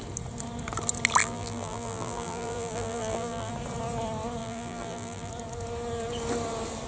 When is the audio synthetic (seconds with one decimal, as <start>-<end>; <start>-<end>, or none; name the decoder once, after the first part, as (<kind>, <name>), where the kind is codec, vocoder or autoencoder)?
1.2-3.5 (vocoder, BigVGAN v2); 4.4-5.3